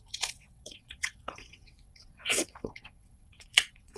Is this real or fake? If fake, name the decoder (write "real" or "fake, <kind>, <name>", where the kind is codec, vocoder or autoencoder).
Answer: fake, vocoder, WaveNeXt